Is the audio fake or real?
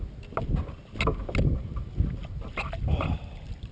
real